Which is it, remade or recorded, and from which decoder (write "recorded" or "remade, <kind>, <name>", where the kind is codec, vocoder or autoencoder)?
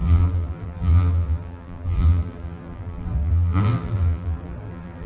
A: remade, vocoder, BigVGAN v2